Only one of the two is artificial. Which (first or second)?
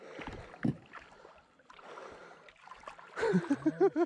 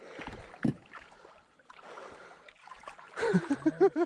second